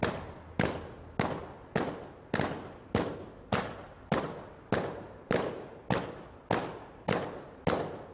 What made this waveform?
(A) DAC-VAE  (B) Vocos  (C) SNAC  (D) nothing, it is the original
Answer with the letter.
D